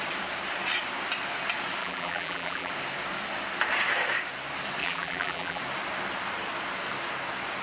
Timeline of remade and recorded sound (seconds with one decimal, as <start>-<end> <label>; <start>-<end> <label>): 0.0-1.8 recorded; 1.8-2.7 remade; 2.7-4.8 recorded; 4.8-5.6 remade; 5.6-7.6 recorded